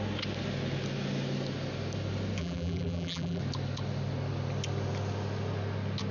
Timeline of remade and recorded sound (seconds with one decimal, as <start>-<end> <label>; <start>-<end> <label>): 0.0-2.4 recorded; 2.4-3.4 remade; 3.4-6.1 recorded